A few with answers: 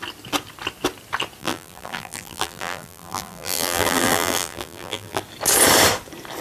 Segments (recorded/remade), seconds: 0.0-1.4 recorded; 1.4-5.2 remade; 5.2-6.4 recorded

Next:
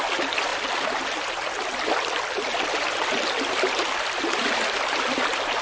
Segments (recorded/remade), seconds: 0.0-5.6 recorded

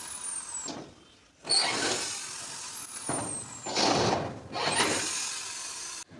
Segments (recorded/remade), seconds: 0.0-6.2 recorded

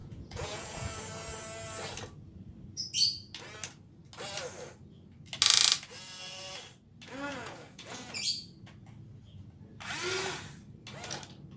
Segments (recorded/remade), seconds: 0.0-1.0 remade; 1.0-7.3 recorded; 7.3-8.1 remade; 8.1-11.6 recorded

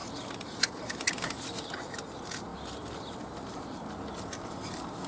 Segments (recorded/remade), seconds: 0.0-1.0 remade; 1.0-2.5 recorded; 2.5-3.9 remade; 3.9-5.1 recorded

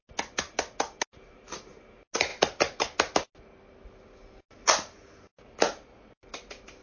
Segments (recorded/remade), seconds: 0.0-6.8 recorded